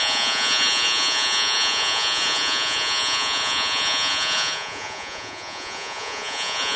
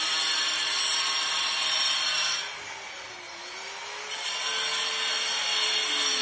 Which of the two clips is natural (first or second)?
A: second